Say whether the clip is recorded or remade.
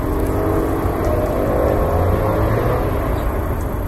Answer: recorded